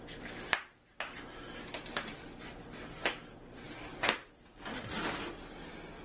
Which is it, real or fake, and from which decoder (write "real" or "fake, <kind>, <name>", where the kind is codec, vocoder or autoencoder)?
real